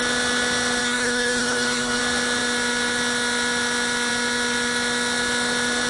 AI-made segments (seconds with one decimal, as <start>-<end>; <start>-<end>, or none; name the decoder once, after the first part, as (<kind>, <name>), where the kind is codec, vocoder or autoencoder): 0.8-2.0 (codec, SNAC)